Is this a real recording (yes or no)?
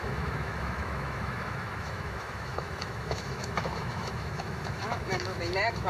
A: no